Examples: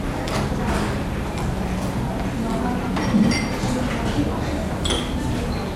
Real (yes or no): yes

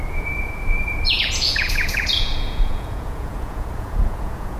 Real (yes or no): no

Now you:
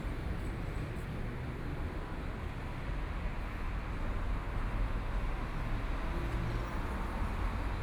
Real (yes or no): yes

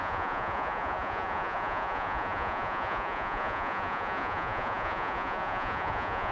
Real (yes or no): no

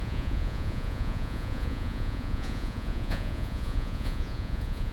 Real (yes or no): no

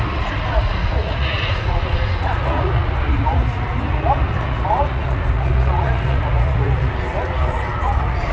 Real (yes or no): no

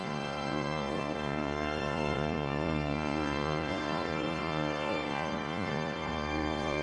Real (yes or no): no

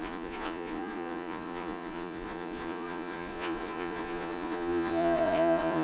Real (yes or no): no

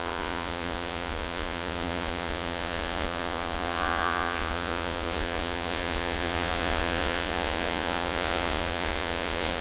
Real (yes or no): no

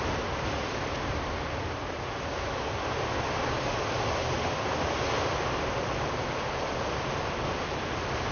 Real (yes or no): yes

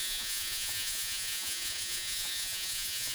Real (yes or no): no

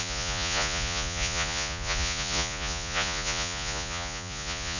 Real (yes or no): no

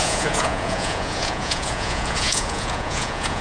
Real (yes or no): no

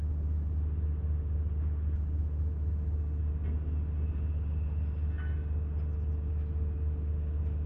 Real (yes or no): yes